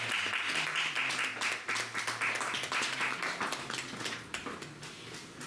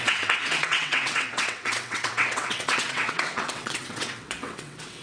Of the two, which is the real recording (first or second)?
first